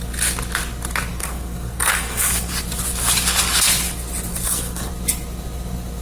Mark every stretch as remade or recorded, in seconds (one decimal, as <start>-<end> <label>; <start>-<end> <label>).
0.0-1.1 recorded; 1.1-2.5 remade; 2.5-4.3 recorded; 4.3-4.9 remade; 4.9-6.0 recorded

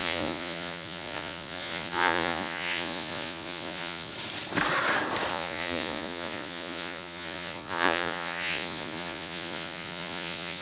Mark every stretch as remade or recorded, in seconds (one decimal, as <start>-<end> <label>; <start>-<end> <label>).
0.0-4.1 remade; 4.1-5.3 recorded; 5.3-10.6 remade